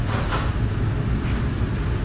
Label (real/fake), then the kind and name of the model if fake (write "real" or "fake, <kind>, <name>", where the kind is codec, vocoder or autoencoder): real